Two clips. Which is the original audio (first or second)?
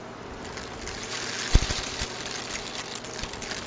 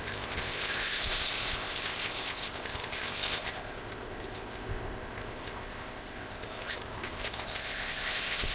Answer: first